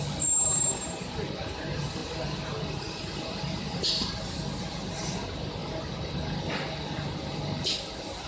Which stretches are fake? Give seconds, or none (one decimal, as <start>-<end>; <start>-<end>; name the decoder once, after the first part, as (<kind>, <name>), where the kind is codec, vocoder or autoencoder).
none